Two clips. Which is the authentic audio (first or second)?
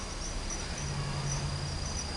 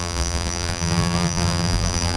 first